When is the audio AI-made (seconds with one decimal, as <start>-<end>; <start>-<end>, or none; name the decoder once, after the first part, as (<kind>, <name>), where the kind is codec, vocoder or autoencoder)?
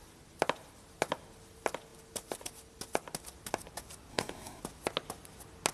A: 4.1-4.6 (codec, SNAC)